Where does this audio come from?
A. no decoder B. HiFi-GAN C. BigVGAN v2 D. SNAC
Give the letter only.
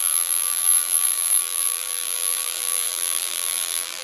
C